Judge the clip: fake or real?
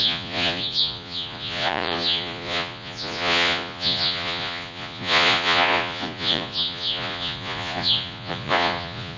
fake